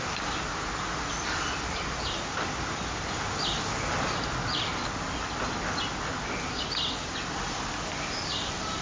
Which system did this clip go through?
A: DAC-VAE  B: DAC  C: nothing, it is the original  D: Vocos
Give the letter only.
C